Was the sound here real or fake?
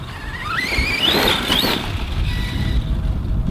real